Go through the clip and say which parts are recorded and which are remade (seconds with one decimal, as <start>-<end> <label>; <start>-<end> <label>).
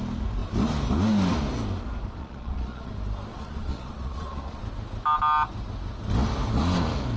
0.0-2.2 recorded; 2.2-2.9 remade; 2.9-3.3 recorded; 3.3-4.6 remade; 4.6-7.2 recorded